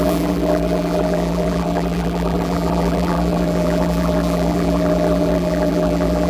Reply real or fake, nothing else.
fake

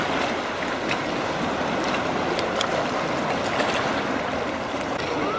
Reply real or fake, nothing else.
real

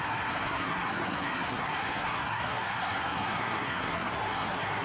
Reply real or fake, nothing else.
fake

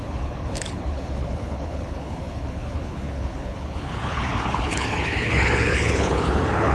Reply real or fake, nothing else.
fake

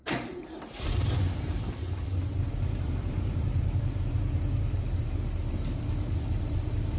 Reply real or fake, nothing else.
fake